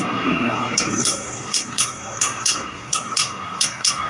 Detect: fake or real fake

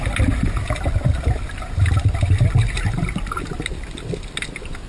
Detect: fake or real real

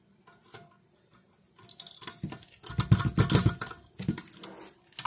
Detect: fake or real real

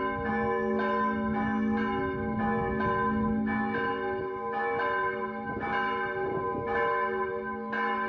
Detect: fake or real real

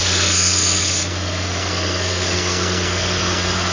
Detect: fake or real fake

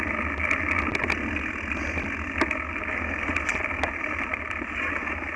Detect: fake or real real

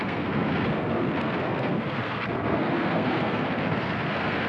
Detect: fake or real fake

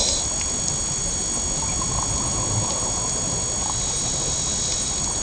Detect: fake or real real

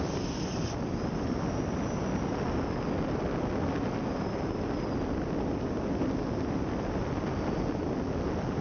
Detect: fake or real real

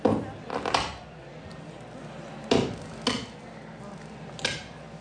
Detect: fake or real real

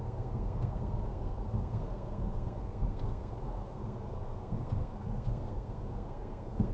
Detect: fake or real fake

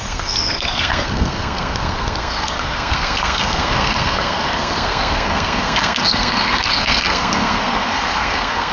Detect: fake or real fake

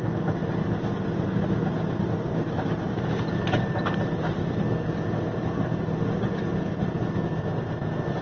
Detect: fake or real real